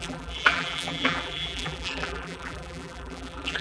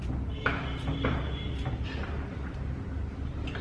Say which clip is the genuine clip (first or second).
second